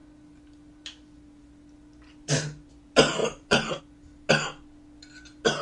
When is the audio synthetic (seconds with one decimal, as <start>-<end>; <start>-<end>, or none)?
3.2-3.8